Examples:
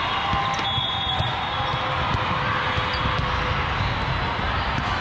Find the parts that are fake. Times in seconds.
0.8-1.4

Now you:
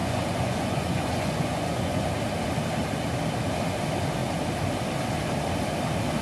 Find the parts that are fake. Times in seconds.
0.0-2.0

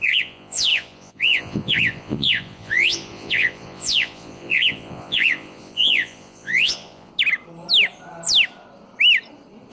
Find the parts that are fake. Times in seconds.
0.0-7.1

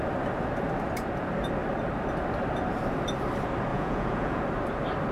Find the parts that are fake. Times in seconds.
3.7-4.4

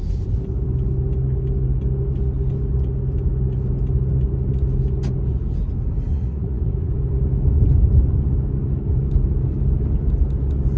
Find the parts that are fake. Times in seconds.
6.1-6.9

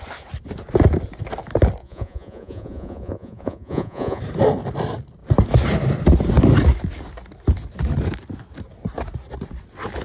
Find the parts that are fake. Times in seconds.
1.8-4.2